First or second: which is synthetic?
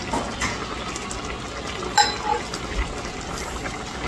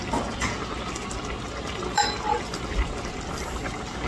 second